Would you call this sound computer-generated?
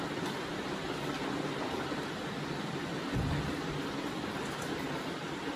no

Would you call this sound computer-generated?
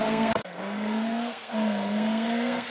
yes